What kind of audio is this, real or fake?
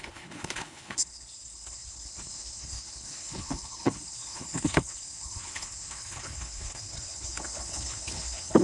fake